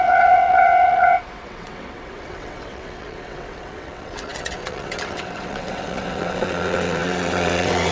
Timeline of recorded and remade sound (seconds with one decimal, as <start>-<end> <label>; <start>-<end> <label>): 0.0-7.9 remade